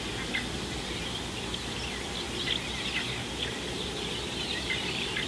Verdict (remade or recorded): recorded